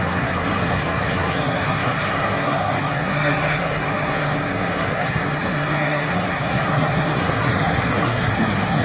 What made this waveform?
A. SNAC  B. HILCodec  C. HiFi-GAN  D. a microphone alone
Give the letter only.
A